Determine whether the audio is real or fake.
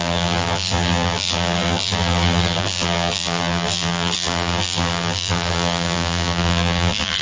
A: fake